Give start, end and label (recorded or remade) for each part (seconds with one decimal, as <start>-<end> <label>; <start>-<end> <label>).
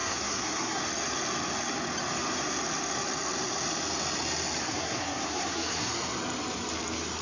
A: 0.0-0.8 remade; 0.8-4.6 recorded; 4.6-5.9 remade; 5.9-7.2 recorded